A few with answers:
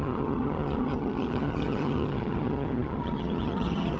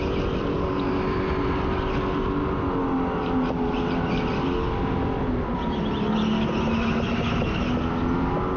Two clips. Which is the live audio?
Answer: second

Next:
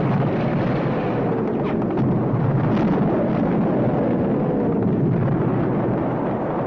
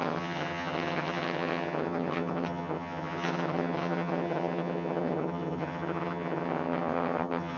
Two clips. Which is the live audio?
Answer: first